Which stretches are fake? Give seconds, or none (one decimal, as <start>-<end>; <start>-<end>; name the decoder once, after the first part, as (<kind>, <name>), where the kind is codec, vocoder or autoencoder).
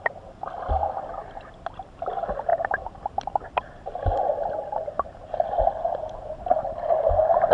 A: none